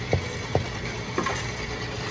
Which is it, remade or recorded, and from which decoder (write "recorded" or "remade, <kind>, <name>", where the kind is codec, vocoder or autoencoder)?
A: recorded